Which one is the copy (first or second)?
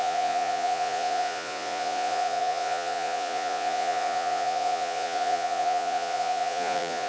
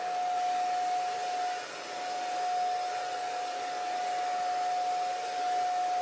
first